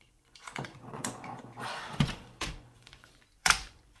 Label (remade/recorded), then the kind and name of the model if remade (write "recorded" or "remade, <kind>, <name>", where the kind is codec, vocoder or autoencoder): remade, vocoder, Vocos